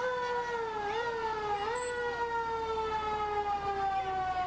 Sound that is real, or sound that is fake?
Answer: real